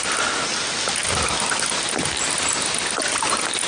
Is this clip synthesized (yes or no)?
no